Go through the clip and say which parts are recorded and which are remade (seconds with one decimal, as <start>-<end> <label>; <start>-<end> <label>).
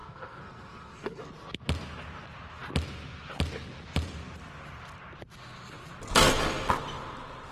0.0-1.2 remade; 1.2-7.5 recorded